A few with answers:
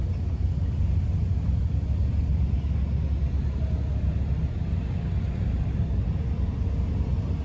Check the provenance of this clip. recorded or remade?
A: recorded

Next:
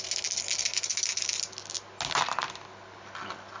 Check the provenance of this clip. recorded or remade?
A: recorded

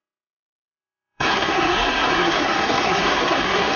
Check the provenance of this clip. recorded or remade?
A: remade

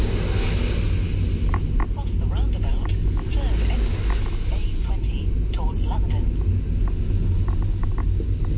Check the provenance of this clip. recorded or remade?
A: recorded